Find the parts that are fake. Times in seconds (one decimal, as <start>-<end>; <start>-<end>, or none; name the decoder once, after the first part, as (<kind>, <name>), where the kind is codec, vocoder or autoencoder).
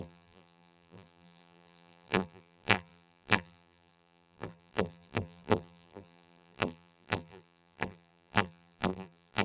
0.0-9.4 (vocoder, BigVGAN v2)